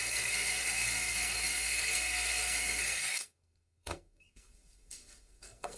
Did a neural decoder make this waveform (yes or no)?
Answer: yes